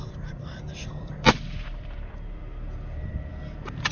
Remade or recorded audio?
remade